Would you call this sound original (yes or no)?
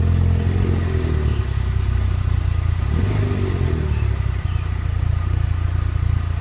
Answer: yes